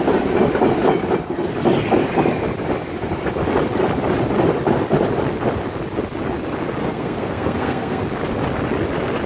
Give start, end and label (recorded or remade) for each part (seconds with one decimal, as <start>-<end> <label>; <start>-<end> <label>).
0.0-6.8 recorded; 6.8-8.0 remade; 8.0-9.3 recorded